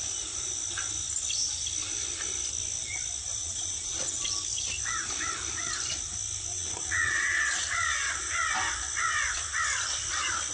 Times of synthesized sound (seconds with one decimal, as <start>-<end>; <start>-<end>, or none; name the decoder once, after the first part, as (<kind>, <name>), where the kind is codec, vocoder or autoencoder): 3.4-4.2 (vocoder, Vocos); 6.5-8.3